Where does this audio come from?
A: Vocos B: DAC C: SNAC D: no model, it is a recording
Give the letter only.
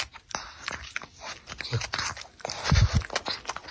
D